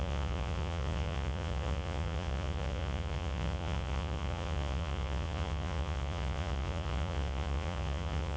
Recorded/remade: remade